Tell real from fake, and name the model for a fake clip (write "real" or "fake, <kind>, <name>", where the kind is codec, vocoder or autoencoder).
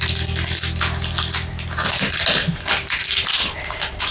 real